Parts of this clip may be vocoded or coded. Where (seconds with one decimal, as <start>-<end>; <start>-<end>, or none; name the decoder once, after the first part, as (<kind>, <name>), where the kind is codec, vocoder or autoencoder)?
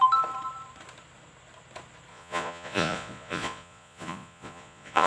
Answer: 2.1-5.1 (vocoder, Vocos)